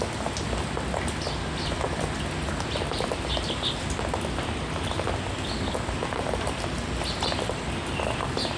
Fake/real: real